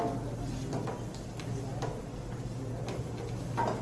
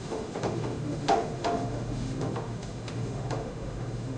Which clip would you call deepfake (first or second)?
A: second